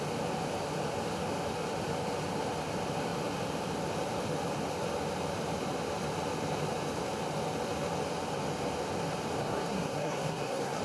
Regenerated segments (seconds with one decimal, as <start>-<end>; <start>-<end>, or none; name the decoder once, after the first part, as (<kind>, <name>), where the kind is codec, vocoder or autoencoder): 9.4-10.8 (codec, SNAC)